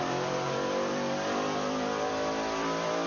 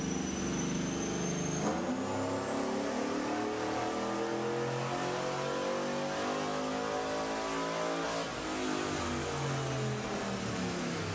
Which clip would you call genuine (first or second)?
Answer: second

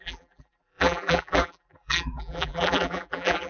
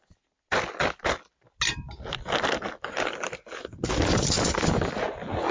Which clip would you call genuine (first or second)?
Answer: second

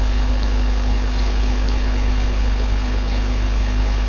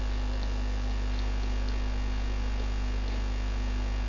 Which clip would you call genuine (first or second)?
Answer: second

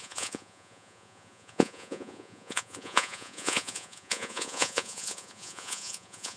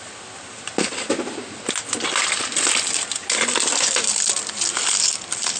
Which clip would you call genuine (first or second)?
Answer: second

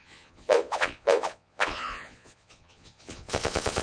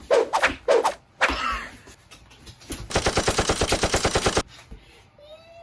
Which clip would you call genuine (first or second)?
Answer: second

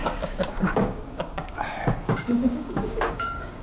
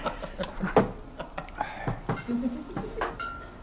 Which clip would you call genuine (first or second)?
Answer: second